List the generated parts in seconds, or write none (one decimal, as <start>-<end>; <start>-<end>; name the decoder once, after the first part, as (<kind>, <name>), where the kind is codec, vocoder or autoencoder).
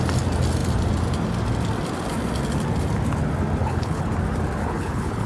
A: 3.6-4.1 (codec, HILCodec); 4.6-5.3